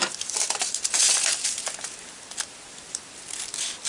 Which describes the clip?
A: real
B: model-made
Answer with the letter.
B